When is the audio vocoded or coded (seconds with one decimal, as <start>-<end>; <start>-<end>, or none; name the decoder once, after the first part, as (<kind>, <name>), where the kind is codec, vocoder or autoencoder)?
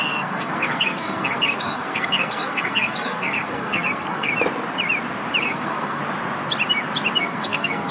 0.0-4.3 (codec, SNAC); 5.4-6.0; 7.2-7.9